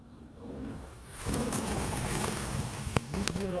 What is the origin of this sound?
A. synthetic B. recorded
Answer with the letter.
A